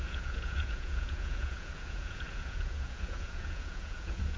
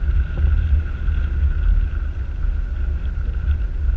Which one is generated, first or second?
first